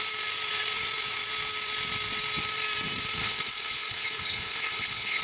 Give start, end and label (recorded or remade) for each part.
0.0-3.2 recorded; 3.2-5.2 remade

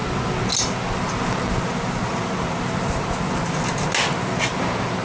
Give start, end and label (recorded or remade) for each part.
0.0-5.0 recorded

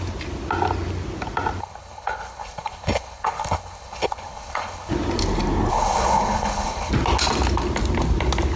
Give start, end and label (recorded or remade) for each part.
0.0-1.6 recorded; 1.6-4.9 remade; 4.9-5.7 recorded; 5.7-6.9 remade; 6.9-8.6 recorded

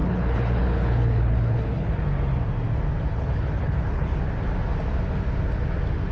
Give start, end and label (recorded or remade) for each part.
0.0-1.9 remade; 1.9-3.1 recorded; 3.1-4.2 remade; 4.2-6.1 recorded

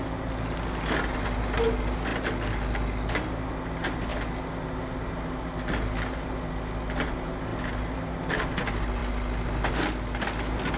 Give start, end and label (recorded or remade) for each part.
0.0-10.8 recorded